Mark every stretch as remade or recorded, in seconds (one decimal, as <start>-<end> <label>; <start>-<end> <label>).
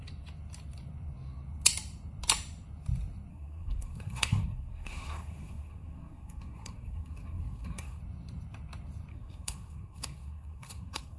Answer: 0.0-3.3 recorded; 3.3-8.0 remade; 8.0-9.1 recorded; 9.1-11.2 remade